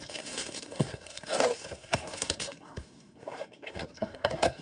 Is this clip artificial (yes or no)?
yes